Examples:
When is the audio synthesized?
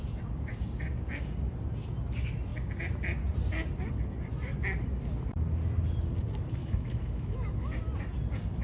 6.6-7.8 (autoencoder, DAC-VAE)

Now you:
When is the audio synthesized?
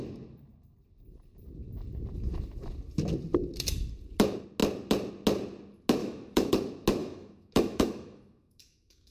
6.0-6.5 (autoencoder, DAC-VAE); 7.0-9.1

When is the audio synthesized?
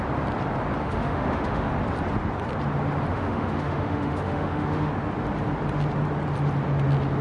0.8-1.7 (autoencoder, DAC-VAE); 3.1-4.9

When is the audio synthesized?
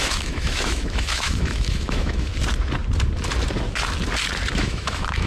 0.0-2.3 (autoencoder, DAC-VAE); 4.5-5.3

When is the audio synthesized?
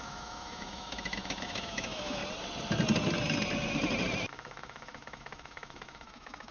0.0-2.2 (autoencoder, DAC-VAE); 4.3-6.5